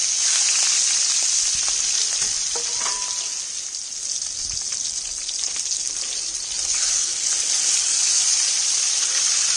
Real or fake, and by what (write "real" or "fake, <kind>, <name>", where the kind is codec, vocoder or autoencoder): real